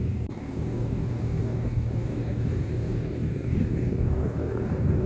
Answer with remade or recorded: remade